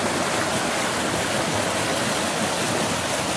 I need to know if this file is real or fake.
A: real